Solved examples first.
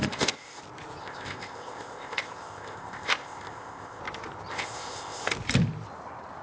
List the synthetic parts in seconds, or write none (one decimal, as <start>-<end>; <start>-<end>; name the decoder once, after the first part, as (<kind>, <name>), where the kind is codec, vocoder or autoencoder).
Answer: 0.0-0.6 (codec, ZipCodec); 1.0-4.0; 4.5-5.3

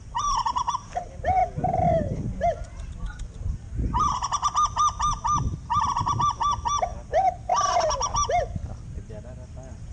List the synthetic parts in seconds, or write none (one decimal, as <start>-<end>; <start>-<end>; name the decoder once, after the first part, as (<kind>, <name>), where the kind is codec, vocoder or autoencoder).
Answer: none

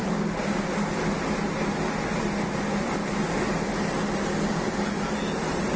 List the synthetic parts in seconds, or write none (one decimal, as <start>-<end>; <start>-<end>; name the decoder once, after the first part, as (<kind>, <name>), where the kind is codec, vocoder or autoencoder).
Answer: 0.0-0.6 (vocoder, BigVGAN v2)